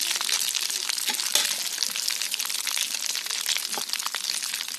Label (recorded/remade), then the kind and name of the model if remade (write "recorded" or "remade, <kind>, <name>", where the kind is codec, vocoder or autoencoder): recorded